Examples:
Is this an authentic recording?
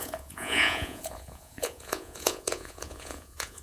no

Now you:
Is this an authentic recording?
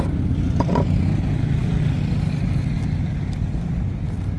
yes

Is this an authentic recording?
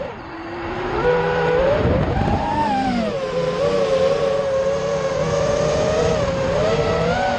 no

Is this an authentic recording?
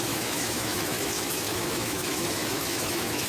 no